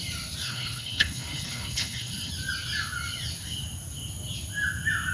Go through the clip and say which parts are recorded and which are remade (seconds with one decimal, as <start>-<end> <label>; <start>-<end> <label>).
0.0-0.4 recorded; 0.4-2.3 remade; 2.3-5.1 recorded